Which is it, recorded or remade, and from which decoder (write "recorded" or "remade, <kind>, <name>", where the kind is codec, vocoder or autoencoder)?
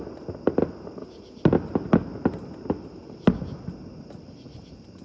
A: recorded